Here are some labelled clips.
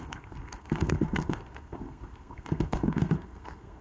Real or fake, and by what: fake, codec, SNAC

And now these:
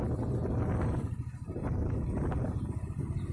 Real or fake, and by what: real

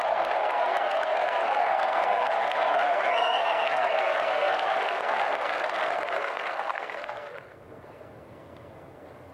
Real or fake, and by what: fake, codec, SNAC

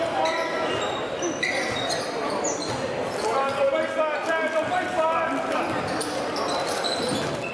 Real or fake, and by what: real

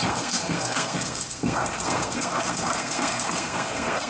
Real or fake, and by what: fake, codec, SNAC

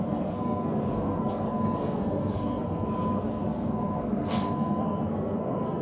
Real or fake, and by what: fake, codec, SNAC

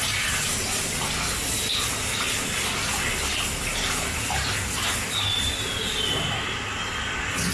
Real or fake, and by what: real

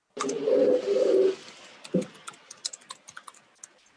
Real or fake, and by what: real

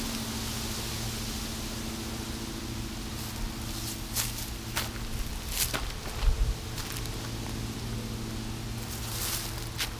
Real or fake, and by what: real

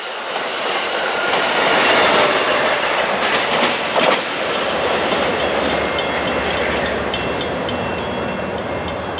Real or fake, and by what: real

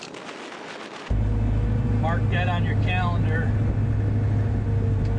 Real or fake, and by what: real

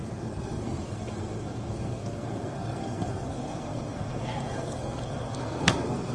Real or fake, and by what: fake, codec, SNAC